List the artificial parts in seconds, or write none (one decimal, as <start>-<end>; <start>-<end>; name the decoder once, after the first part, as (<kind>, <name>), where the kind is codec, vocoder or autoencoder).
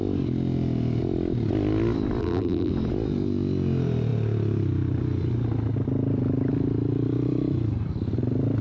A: 2.2-2.7 (vocoder, BigVGAN v2)